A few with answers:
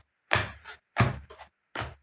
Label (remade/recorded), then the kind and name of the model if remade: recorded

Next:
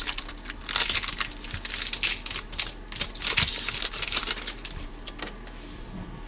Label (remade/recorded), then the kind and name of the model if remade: recorded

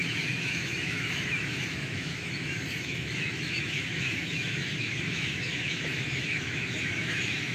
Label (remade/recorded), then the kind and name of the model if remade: remade, autoencoder, DAC-VAE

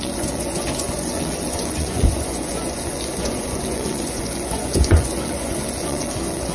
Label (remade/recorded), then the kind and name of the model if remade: remade, vocoder, Vocos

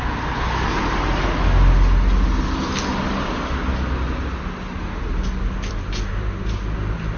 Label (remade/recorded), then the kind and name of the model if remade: recorded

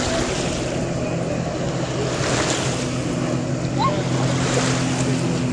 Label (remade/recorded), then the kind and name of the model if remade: recorded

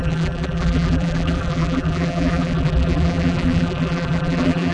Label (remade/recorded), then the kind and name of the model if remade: remade, vocoder, BigVGAN v2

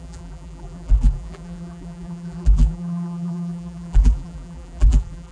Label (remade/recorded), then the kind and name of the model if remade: remade, vocoder, BigVGAN v2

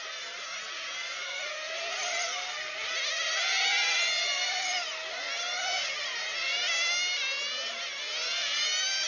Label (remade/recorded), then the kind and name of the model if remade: recorded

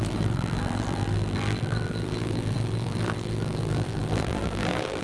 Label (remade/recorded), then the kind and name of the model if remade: remade, vocoder, BigVGAN v2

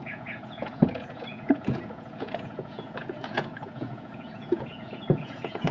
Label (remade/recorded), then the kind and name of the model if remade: remade, vocoder, Vocos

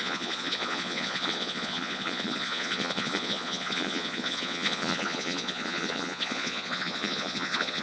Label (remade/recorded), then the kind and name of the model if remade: remade, vocoder, Vocos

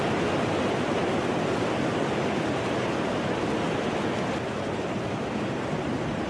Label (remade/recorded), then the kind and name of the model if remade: recorded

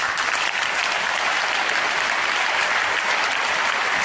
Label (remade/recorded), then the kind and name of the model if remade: recorded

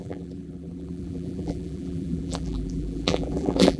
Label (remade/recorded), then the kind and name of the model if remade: remade, vocoder, BigVGAN v2